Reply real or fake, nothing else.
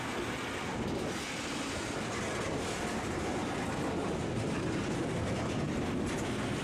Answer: real